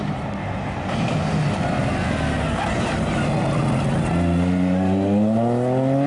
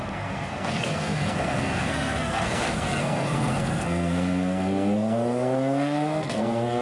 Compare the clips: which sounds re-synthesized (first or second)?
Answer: second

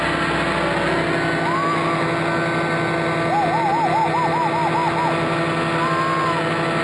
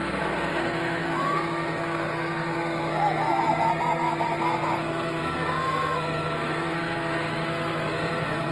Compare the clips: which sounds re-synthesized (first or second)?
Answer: second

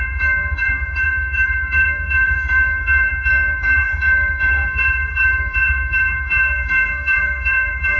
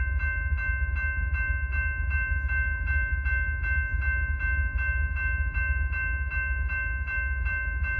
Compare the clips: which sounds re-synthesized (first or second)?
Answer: first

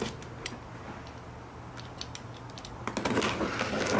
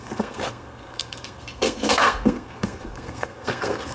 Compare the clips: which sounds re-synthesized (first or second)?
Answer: second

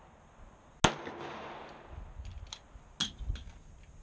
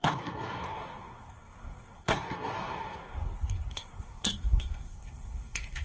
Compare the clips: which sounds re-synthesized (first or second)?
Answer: second